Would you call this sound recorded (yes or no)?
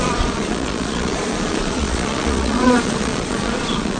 no